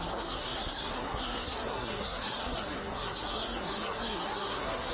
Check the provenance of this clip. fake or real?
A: fake